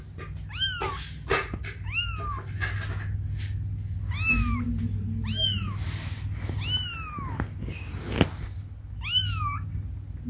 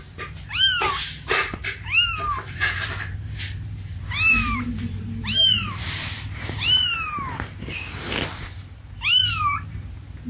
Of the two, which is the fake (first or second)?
second